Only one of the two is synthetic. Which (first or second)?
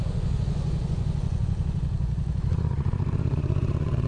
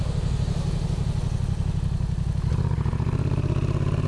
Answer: first